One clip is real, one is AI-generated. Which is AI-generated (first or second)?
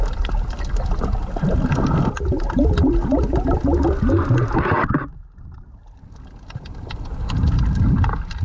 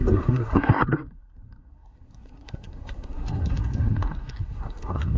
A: second